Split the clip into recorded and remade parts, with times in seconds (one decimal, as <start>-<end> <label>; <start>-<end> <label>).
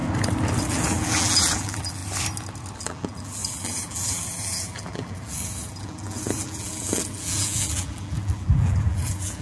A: 0.0-0.7 recorded; 0.7-2.0 remade; 2.0-2.8 recorded; 2.8-9.4 remade